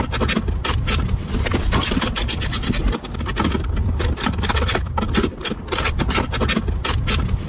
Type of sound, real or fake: real